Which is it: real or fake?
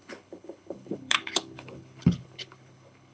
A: fake